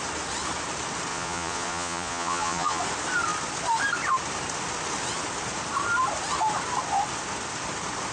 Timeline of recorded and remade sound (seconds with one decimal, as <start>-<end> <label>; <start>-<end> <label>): 0.0-1.1 recorded; 1.1-2.8 remade; 2.8-8.1 recorded